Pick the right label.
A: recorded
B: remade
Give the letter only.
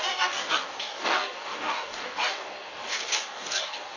B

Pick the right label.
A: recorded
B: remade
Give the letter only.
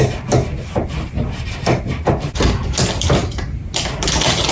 A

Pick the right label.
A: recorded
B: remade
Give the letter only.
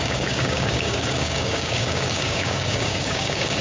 B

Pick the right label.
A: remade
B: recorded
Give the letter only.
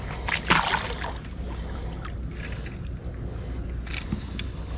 B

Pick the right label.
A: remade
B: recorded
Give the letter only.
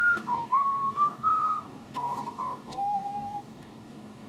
A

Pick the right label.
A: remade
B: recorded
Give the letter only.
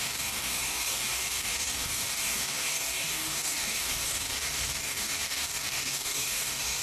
A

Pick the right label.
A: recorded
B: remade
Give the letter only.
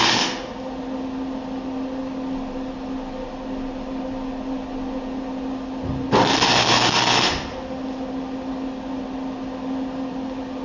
A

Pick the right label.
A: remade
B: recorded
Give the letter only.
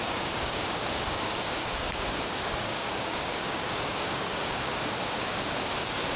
A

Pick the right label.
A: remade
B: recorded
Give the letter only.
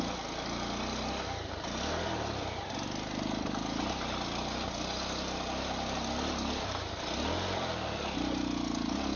B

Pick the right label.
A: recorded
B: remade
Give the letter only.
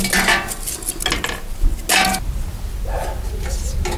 A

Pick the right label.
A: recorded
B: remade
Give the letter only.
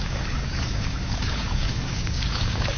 B